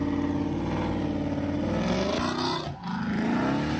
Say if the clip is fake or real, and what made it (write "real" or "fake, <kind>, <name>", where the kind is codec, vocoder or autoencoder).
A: real